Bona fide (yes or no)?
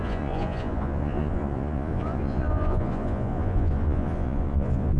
no